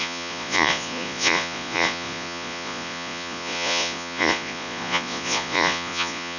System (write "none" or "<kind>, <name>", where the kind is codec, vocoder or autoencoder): vocoder, Vocos